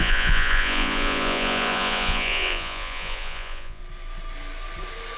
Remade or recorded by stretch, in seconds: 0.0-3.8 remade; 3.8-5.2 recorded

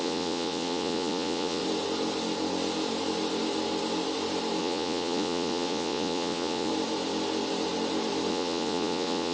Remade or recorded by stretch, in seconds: 0.0-1.6 remade; 1.6-4.6 recorded; 4.6-6.7 remade; 6.7-8.3 recorded; 8.3-9.3 remade

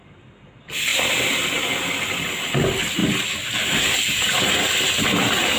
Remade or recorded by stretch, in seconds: 0.0-5.6 recorded

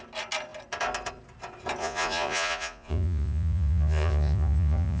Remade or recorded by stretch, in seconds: 0.0-1.8 recorded; 1.8-5.0 remade

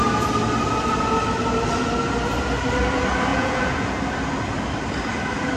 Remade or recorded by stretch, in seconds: 0.0-3.3 recorded; 3.3-4.0 remade; 4.0-5.6 recorded

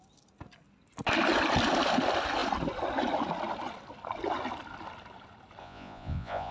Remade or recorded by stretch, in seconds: 0.0-5.6 recorded; 5.6-6.5 remade

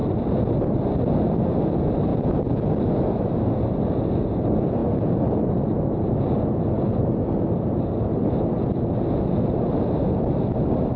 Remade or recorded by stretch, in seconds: 0.0-2.1 recorded; 2.1-2.8 remade; 2.8-11.0 recorded

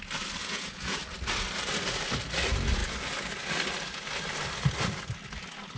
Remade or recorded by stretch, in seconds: 0.0-0.4 recorded; 0.4-1.0 remade; 1.0-5.8 recorded